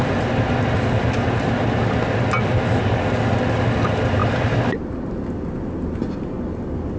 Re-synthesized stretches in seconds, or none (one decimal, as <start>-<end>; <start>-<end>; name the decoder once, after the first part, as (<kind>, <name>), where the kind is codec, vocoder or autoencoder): none